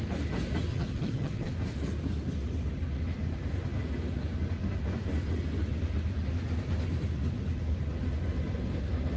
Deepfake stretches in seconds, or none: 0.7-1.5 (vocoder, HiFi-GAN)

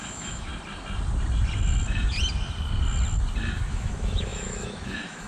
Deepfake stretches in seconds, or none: 0.0-0.5 (autoencoder, DAC-VAE); 3.7-5.3